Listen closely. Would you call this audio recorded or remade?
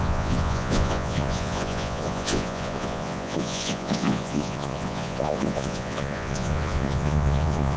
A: remade